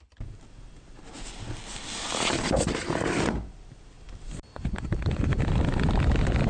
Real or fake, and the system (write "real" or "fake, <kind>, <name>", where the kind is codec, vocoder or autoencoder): real